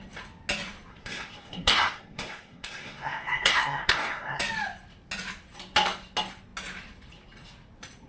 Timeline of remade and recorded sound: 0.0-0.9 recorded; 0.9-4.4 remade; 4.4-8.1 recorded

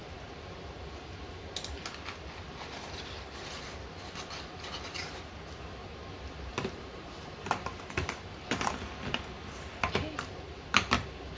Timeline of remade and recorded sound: 0.0-6.5 recorded; 6.5-8.6 remade; 8.6-11.4 recorded

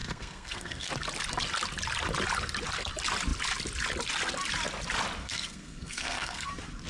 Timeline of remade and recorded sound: 0.0-0.9 remade; 0.9-5.2 recorded; 5.2-6.5 remade; 6.5-6.9 recorded

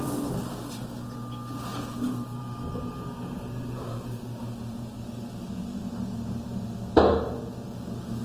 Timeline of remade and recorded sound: 0.0-1.7 recorded; 1.7-6.6 remade; 6.6-8.2 recorded

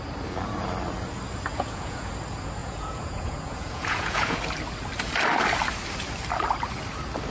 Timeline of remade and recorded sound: 0.0-1.5 recorded; 1.5-2.1 remade; 2.1-2.6 recorded; 2.6-4.4 remade; 4.4-7.3 recorded

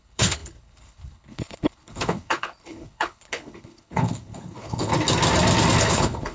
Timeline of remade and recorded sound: 0.0-4.9 remade; 4.9-5.8 recorded; 5.8-6.3 remade

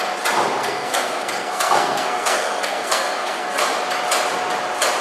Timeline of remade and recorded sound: 0.0-0.6 recorded; 0.6-3.6 remade; 3.6-5.0 recorded